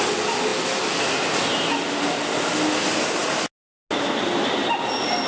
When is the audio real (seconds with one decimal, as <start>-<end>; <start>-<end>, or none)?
0.0-5.3